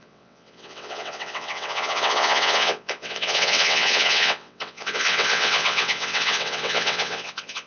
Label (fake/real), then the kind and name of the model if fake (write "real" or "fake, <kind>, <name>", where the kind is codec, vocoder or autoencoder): fake, vocoder, WaveNeXt